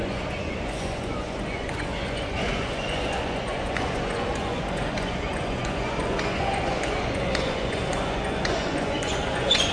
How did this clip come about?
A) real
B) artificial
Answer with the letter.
B